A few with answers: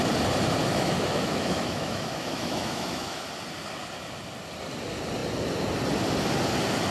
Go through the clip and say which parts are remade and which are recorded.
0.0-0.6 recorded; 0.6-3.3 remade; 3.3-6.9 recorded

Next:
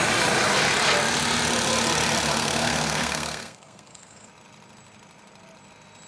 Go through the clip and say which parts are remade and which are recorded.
0.0-2.4 recorded; 2.4-4.3 remade; 4.3-6.1 recorded

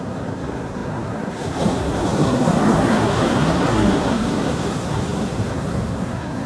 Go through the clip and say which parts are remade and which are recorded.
0.0-6.5 remade

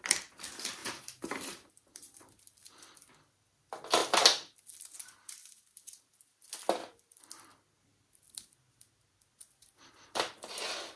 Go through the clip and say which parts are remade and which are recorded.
0.0-0.8 recorded; 0.8-2.8 remade; 2.8-11.0 recorded

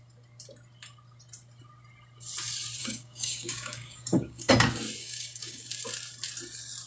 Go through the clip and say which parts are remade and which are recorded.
0.0-2.8 recorded; 2.8-4.5 remade; 4.5-5.0 recorded; 5.0-5.7 remade; 5.7-6.9 recorded

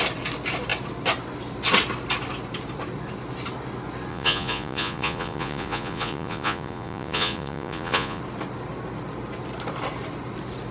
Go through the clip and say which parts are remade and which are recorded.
0.0-4.1 recorded; 4.1-8.2 remade; 8.2-10.7 recorded

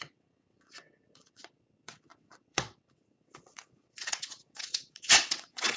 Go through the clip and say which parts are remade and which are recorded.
0.0-5.8 remade

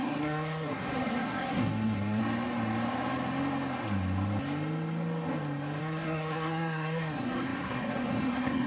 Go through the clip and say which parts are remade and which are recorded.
0.0-2.2 remade; 2.2-5.8 recorded; 5.8-8.7 remade